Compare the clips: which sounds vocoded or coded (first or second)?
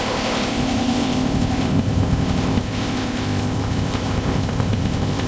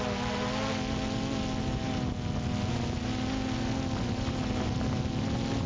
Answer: first